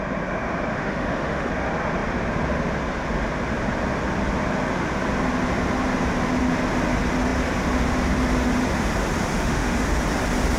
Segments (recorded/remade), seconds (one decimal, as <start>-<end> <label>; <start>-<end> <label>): 0.0-0.7 recorded; 0.7-1.5 remade; 1.5-9.3 recorded; 9.3-10.0 remade; 10.0-10.6 recorded